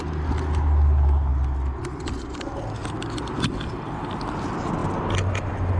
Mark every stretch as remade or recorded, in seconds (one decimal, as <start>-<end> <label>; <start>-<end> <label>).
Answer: 0.0-2.8 recorded; 2.8-3.7 remade; 3.7-5.8 recorded